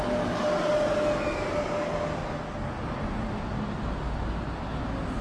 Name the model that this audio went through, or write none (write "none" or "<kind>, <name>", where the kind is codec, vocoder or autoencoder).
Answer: none